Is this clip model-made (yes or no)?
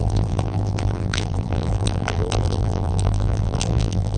yes